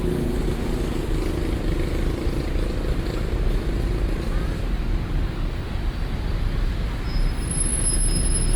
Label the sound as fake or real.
real